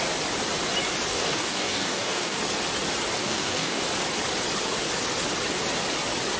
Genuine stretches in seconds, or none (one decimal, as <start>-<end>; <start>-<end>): 0.0-1.1; 2.4-3.2; 3.8-6.4